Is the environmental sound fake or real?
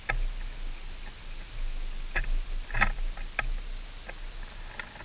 real